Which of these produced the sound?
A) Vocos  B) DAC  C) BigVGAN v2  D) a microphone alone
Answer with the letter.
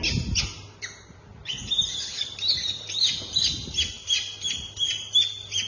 D